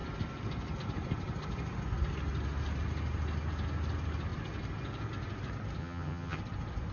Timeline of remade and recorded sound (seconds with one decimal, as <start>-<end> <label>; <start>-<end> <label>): 0.0-5.8 recorded; 5.8-6.4 remade; 6.4-6.9 recorded